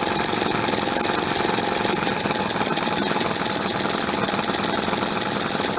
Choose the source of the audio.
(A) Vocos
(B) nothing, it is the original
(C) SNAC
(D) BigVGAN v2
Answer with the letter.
B